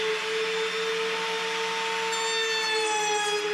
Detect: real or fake real